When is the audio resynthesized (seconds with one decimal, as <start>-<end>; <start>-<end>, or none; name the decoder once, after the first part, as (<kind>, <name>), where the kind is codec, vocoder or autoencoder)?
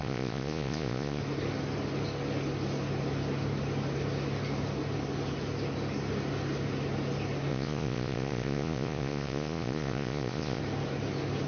0.0-1.2 (vocoder, Vocos); 7.5-10.6